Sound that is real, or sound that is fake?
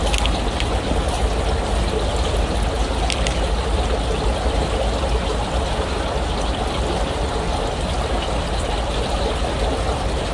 real